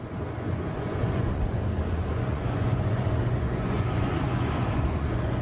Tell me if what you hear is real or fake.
fake